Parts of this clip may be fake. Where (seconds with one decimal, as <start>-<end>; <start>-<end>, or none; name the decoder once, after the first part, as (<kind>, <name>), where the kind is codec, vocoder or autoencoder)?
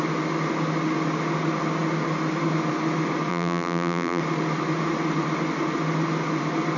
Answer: 3.3-4.2 (vocoder, BigVGAN v2)